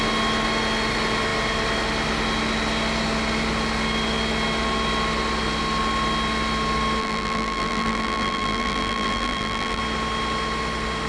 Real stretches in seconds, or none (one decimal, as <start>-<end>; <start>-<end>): 0.0-7.0; 9.8-11.1